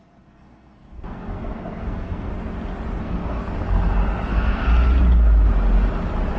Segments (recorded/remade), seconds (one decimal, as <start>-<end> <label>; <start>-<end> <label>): 0.0-2.3 remade; 2.3-3.0 recorded; 3.0-3.4 remade; 3.4-4.3 recorded; 4.3-4.7 remade; 4.7-6.4 recorded